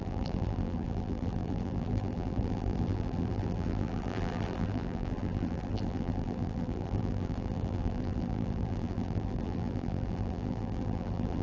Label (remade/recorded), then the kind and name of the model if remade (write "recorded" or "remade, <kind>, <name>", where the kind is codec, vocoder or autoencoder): remade, vocoder, BigVGAN v2